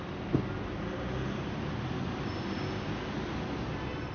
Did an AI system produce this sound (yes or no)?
no